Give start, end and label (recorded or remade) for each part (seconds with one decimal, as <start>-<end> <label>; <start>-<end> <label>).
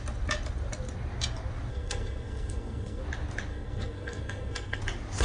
0.0-1.7 recorded; 1.7-3.0 remade; 3.0-3.5 recorded; 3.5-4.8 remade; 4.8-5.2 recorded